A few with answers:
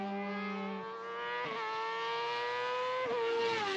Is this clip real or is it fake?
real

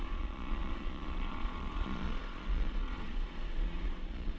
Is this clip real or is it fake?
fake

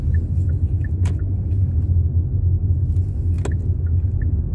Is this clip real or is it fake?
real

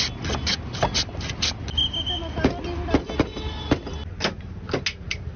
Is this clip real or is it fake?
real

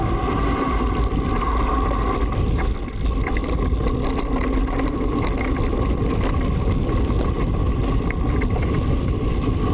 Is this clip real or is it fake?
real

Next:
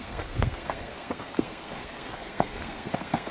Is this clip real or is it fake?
fake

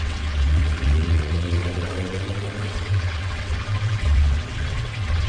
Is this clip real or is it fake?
fake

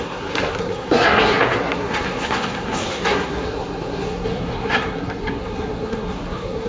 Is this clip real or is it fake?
fake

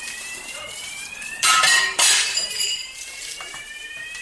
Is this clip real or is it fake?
fake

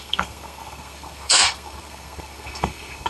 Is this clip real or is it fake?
fake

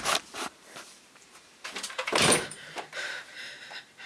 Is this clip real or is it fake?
fake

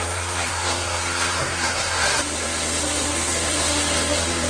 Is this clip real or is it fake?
fake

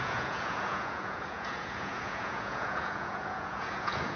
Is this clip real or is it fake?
fake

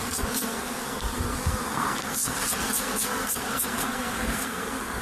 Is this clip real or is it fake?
fake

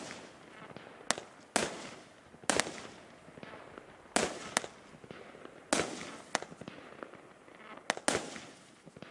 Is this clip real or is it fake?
real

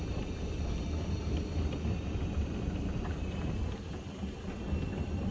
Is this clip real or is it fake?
real